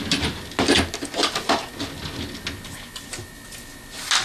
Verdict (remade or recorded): recorded